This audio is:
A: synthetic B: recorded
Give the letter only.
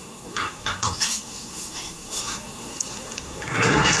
A